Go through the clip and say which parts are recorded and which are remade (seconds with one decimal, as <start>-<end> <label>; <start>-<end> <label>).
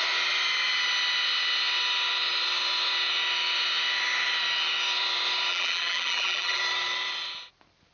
0.0-5.5 recorded; 5.5-6.6 remade; 6.6-7.9 recorded